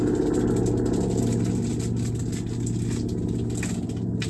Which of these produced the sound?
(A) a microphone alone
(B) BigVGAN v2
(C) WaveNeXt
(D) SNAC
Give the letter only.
A